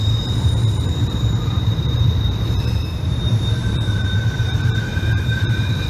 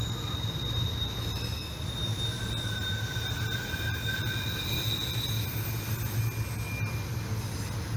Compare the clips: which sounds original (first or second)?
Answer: second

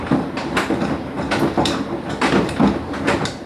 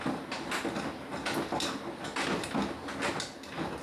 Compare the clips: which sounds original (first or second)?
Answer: second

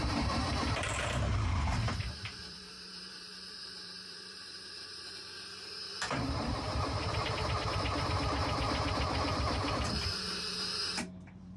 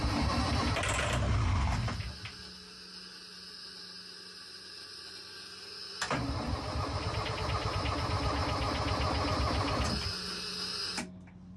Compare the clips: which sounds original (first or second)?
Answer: second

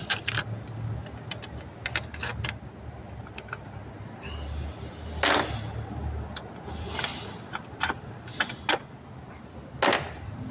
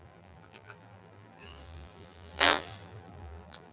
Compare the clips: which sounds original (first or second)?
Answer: first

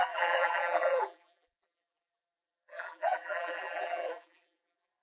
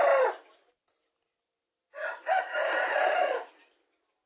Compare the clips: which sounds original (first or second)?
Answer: second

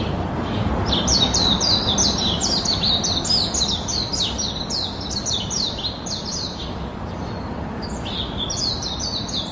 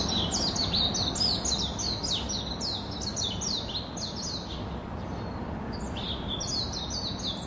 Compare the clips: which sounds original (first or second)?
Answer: second